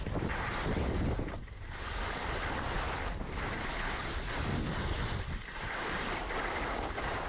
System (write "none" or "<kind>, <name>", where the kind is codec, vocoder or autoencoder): none